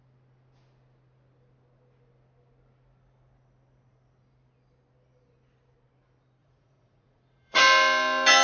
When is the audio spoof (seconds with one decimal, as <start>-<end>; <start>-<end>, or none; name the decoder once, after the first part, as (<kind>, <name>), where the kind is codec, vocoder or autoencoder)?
6.4-7.6 (vocoder, Vocos)